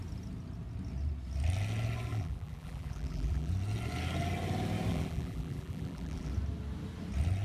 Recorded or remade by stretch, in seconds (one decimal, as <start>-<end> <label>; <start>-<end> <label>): 0.0-2.1 recorded; 2.1-3.5 remade; 3.5-4.9 recorded; 4.9-6.3 remade; 6.3-7.4 recorded